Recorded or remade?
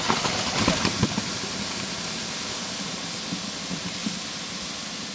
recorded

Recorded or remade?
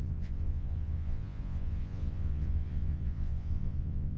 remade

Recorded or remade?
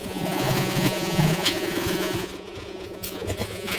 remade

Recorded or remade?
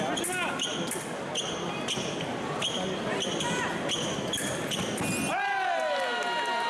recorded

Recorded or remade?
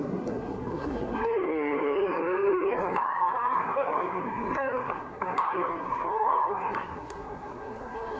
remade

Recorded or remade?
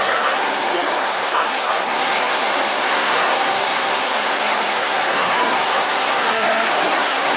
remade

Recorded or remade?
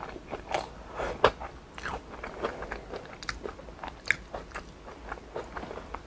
recorded